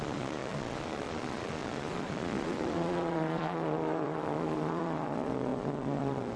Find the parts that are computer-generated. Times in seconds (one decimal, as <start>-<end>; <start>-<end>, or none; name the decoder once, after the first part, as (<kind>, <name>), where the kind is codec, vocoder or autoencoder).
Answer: 0.0-6.4 (vocoder, Vocos)